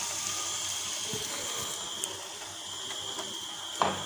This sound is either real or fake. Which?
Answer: real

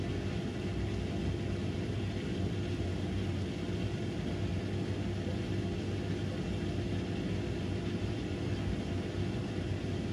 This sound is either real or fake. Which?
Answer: real